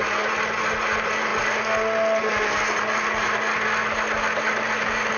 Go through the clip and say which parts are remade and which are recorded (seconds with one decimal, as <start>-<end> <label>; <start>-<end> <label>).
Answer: 0.0-5.2 recorded

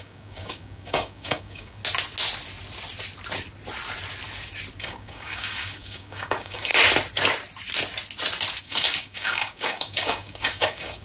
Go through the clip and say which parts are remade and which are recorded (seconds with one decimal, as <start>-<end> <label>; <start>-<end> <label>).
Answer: 0.0-1.8 remade; 1.8-4.8 recorded; 4.8-6.7 remade; 6.7-8.6 recorded; 8.6-11.0 remade

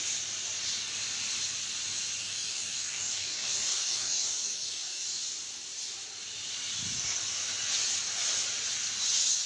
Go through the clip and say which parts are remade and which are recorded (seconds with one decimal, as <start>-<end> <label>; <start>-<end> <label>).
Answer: 0.0-2.2 recorded; 2.2-5.2 remade; 5.2-9.5 recorded

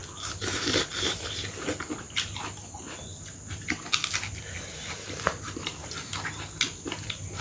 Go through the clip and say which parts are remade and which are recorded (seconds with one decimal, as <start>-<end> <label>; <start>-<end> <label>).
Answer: 0.0-7.4 recorded